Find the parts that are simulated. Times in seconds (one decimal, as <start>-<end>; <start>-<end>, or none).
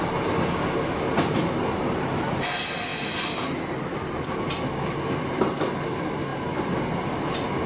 2.9-4.0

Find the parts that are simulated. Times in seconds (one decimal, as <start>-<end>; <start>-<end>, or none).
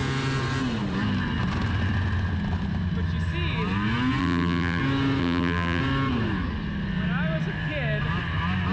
4.2-4.8; 5.2-5.8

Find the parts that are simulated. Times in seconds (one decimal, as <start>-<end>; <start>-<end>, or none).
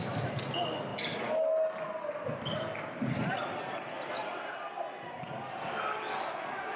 none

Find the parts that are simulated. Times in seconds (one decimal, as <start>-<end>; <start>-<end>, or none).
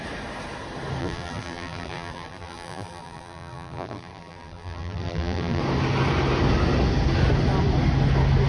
1.0-5.6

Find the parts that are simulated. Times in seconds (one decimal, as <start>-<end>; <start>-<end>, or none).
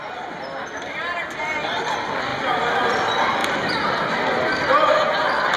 3.4-4.1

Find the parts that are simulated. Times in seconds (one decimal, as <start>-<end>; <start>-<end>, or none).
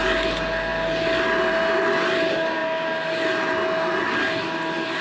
none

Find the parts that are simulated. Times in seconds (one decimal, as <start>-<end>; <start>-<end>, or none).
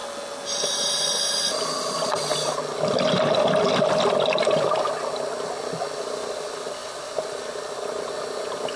4.5-8.8